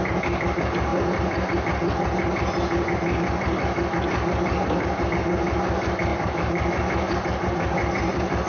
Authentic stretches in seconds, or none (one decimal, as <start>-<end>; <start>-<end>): 0.0-6.1